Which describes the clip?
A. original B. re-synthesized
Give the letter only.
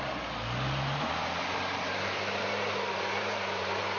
A